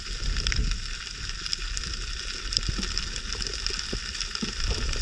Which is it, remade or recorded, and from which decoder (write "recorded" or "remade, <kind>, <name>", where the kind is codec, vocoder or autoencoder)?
recorded